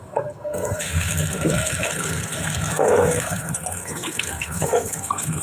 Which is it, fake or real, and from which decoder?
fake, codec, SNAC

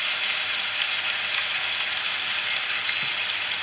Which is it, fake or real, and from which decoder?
real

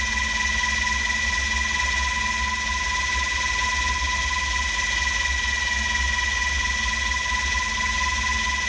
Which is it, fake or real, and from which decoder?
real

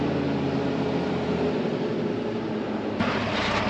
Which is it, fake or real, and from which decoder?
real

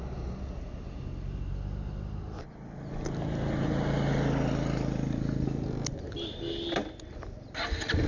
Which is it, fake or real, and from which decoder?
real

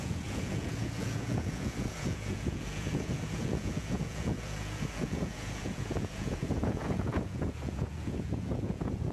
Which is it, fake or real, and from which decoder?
fake, vocoder, Vocos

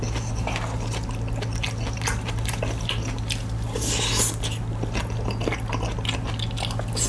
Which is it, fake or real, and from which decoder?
real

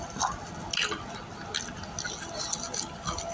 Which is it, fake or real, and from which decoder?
real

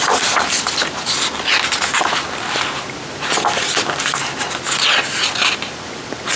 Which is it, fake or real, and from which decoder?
real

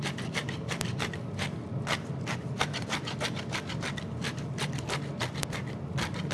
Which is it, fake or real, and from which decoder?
fake, vocoder, BigVGAN v2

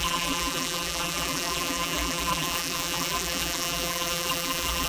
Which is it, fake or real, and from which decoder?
fake, vocoder, BigVGAN v2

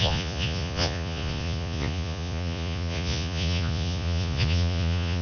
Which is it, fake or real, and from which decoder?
fake, vocoder, Vocos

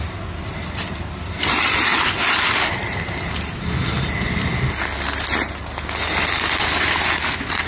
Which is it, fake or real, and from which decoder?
real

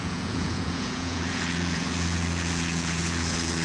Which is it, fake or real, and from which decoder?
fake, vocoder, Vocos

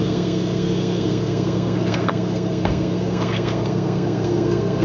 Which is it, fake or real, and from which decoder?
fake, codec, SNAC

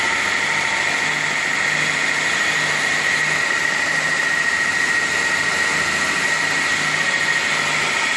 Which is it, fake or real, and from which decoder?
real